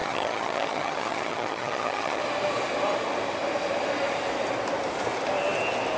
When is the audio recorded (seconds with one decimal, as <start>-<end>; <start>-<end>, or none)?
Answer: 2.2-6.0